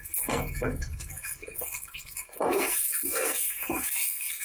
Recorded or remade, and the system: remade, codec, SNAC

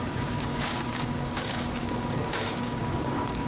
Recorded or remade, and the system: remade, codec, DAC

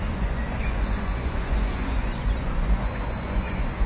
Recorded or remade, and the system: remade, vocoder, Vocos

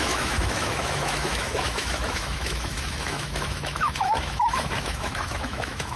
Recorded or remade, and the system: remade, autoencoder, DAC-VAE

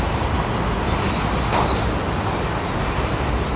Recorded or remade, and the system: recorded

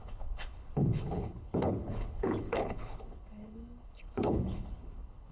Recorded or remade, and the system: remade, codec, HILCodec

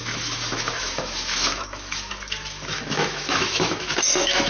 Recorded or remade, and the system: remade, autoencoder, DAC-VAE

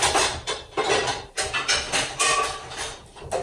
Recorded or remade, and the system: recorded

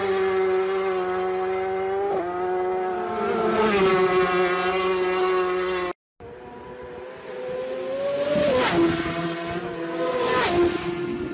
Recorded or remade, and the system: recorded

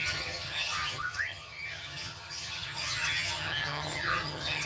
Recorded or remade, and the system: remade, vocoder, HiFi-GAN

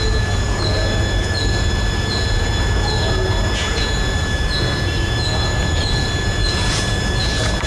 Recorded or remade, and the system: remade, vocoder, Vocos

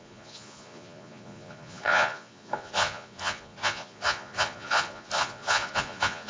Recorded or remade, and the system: remade, vocoder, Vocos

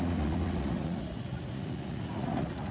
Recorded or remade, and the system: remade, vocoder, Vocos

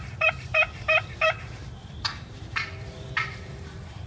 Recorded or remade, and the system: remade, vocoder, BigVGAN v2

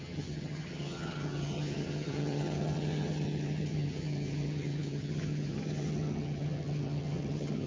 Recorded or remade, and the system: remade, vocoder, HiFi-GAN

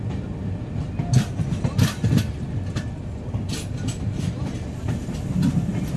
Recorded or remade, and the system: recorded